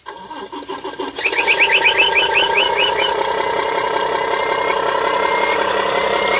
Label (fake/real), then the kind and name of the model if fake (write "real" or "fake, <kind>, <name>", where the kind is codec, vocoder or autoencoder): real